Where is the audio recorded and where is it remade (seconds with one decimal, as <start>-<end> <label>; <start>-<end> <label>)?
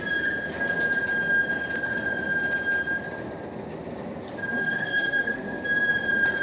0.0-4.6 recorded; 4.6-5.6 remade; 5.6-6.4 recorded